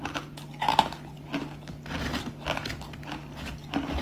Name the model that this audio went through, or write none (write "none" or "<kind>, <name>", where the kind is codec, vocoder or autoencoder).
none